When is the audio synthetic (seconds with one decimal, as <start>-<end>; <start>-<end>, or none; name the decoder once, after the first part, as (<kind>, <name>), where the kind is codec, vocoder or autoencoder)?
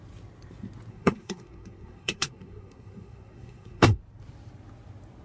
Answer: 0.9-4.0 (codec, SNAC)